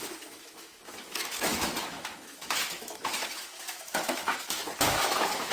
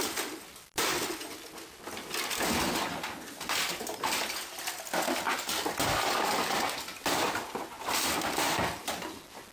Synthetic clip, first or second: first